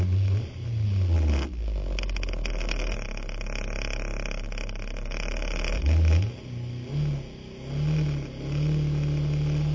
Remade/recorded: recorded